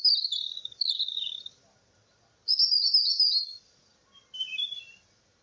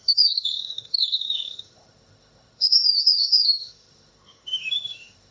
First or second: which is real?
first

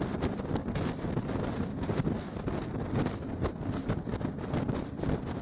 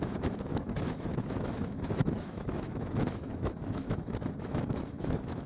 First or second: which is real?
first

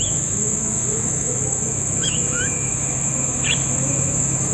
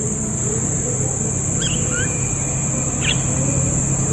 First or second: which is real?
second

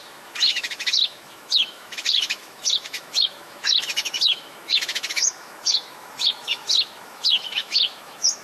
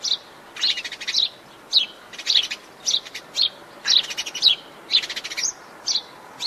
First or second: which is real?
second